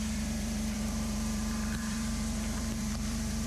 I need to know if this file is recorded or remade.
remade